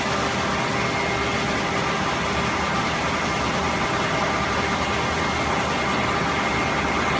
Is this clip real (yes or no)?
yes